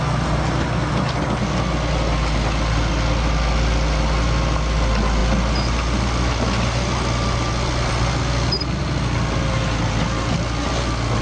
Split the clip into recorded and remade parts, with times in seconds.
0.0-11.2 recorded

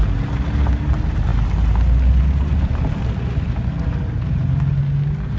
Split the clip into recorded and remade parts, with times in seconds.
0.0-5.4 recorded

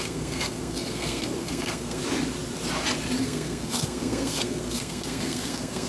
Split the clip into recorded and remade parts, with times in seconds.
0.0-2.0 remade; 2.0-3.2 recorded; 3.2-5.9 remade

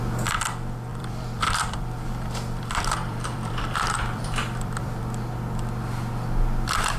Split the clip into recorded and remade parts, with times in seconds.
0.0-0.9 recorded; 0.9-5.0 remade; 5.0-7.0 recorded

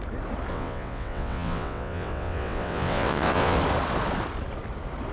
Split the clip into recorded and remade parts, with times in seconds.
0.0-0.5 recorded; 0.5-3.6 remade; 3.6-5.1 recorded

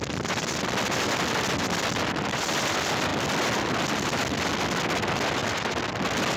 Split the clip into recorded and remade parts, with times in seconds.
0.0-6.4 recorded